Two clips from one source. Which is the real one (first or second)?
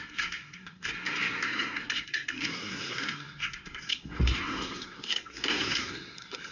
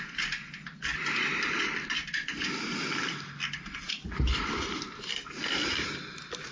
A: second